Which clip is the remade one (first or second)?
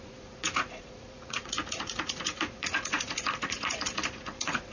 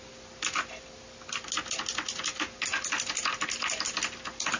first